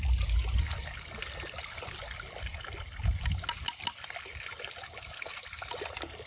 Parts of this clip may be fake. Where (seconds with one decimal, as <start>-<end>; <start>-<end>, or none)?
none